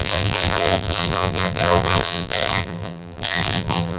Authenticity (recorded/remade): remade